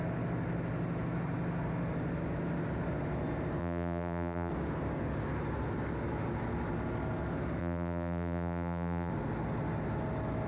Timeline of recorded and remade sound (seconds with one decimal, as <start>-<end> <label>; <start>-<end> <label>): 0.0-3.6 recorded; 3.6-4.5 remade; 4.5-7.6 recorded; 7.6-9.1 remade; 9.1-10.5 recorded